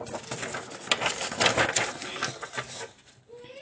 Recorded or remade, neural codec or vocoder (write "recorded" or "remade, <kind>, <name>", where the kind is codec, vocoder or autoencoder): recorded